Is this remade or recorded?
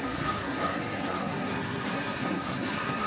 remade